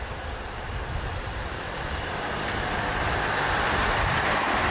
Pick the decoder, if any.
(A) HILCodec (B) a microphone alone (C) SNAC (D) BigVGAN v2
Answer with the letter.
D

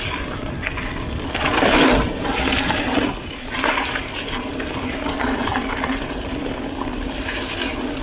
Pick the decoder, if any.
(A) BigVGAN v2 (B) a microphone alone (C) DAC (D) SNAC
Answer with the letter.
B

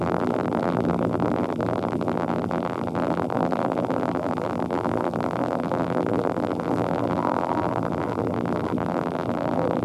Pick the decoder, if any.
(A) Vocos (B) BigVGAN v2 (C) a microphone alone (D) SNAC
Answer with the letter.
B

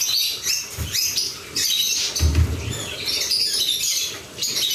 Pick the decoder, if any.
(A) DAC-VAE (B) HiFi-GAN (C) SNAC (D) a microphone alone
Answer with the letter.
D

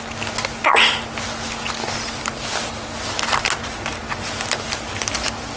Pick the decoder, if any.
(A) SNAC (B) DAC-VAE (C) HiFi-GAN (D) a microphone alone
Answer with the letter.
D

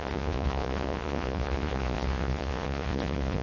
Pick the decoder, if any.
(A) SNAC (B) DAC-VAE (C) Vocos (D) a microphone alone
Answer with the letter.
C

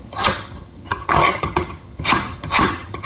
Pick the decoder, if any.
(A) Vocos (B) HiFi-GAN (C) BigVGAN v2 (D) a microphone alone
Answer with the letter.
B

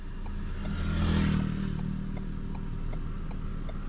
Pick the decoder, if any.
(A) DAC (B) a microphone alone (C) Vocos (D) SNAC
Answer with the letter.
B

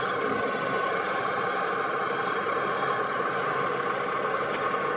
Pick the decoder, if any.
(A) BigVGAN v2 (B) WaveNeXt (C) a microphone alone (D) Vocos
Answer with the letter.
A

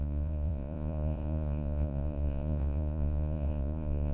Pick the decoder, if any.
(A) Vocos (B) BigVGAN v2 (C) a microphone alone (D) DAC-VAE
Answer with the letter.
A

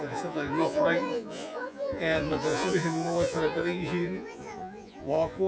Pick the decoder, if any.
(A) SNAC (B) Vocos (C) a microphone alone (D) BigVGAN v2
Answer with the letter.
B